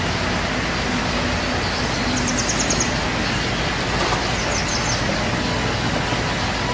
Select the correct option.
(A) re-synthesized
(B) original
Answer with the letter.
B